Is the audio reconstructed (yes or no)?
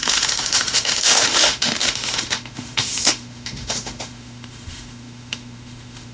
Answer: yes